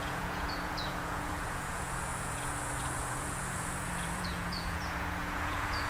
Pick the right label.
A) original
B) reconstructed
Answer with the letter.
B